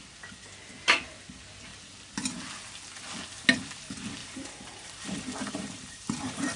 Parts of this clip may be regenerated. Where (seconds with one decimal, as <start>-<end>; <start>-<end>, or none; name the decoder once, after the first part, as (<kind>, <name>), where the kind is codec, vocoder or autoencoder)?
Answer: 4.2-6.6 (vocoder, BigVGAN v2)